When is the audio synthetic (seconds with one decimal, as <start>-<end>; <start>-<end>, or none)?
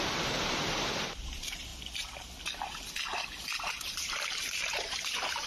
0.0-1.7; 3.6-5.5